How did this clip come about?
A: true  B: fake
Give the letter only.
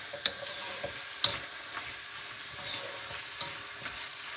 A